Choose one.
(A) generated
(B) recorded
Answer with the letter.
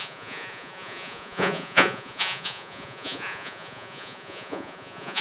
A